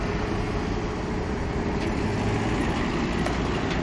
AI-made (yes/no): no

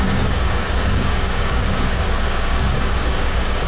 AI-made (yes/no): yes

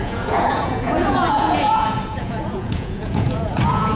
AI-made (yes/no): yes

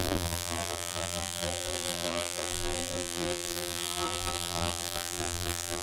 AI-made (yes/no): yes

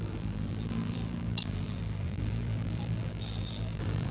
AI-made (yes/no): yes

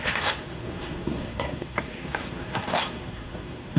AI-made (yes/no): yes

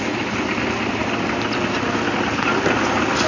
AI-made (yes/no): no